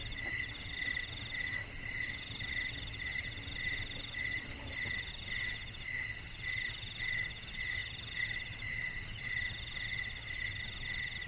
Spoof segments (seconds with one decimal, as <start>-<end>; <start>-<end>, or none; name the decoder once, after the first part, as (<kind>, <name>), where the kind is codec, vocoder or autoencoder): 0.0-5.1 (vocoder, BigVGAN v2); 7.8-9.3